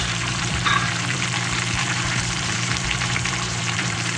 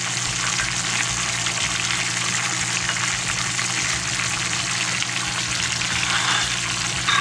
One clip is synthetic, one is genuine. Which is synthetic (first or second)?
first